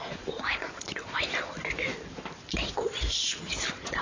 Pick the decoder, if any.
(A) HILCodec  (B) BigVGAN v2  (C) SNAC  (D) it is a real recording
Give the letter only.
D